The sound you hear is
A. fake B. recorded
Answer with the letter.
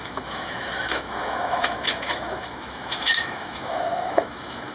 A